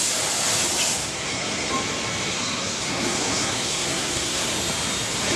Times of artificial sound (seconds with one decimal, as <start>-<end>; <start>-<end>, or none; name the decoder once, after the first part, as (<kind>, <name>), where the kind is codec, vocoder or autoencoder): 1.0-1.7 (codec, SNAC); 2.3-4.5